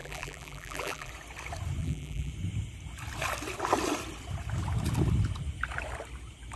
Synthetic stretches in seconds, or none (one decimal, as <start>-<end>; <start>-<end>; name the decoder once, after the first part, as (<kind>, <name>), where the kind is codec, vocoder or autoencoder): 0.0-1.1 (vocoder, BigVGAN v2); 1.8-2.3